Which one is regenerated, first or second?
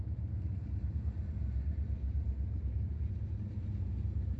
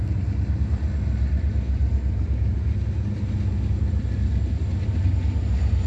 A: first